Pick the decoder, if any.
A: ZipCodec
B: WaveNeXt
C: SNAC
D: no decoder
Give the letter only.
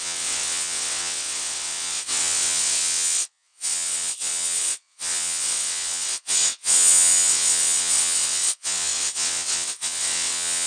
B